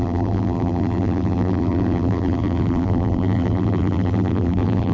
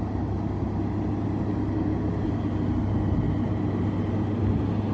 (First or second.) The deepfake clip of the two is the first